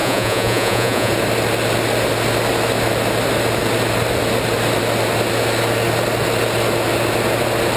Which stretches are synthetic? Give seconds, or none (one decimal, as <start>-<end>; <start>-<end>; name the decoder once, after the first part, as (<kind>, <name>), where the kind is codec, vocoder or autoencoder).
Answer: 0.0-1.1 (vocoder, Vocos)